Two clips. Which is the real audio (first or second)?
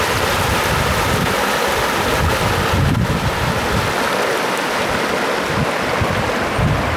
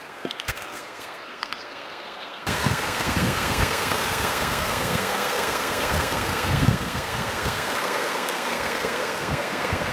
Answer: first